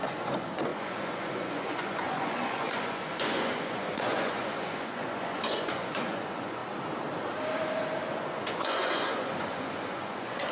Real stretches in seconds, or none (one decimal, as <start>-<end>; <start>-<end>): 6.6-8.1